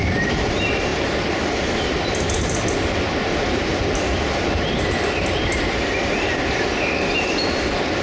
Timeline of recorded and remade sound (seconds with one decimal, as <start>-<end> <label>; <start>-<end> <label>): 0.0-8.0 recorded